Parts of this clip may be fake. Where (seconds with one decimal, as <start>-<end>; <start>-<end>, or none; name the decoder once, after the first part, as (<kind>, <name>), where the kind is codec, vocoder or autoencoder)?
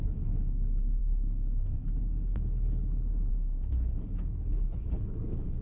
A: 0.0-5.6 (codec, HILCodec)